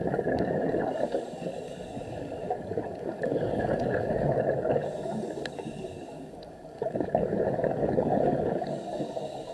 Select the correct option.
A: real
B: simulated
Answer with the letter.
B